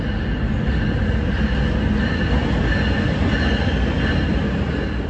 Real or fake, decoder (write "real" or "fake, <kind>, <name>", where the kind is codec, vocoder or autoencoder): real